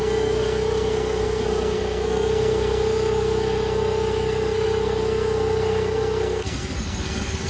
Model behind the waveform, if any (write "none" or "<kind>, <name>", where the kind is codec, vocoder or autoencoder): codec, SNAC